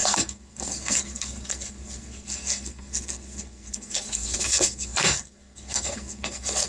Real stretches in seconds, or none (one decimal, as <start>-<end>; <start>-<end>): none